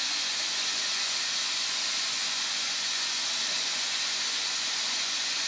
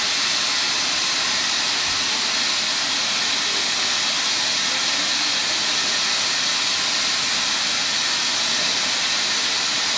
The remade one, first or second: first